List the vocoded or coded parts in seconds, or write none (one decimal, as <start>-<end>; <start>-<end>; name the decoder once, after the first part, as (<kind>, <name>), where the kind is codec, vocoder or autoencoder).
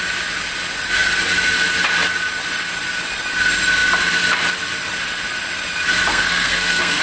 6.1-7.0 (codec, SNAC)